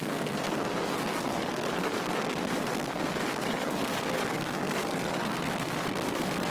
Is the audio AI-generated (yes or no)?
yes